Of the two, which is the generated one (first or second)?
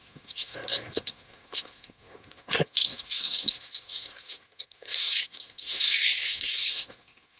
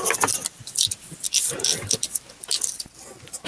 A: first